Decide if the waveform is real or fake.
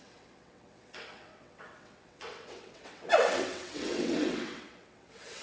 fake